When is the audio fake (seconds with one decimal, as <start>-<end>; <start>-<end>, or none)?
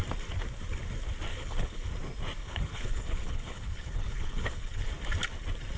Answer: 1.3-1.9; 2.4-4.9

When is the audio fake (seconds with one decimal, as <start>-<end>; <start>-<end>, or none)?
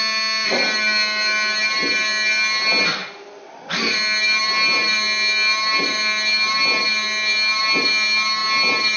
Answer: none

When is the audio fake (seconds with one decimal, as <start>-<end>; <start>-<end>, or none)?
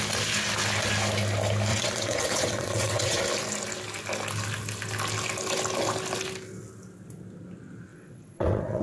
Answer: 1.7-3.2; 7.9-8.8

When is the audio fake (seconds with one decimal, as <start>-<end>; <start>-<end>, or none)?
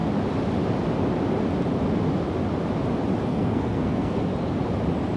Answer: 3.2-4.2